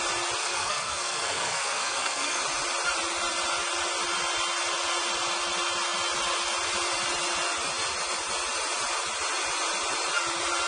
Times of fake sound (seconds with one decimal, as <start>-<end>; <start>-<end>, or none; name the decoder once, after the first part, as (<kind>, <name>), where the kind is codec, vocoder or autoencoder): 0.4-2.4 (codec, SNAC)